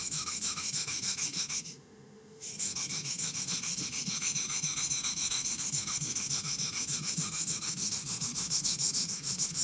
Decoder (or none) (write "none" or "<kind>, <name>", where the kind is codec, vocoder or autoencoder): autoencoder, DAC-VAE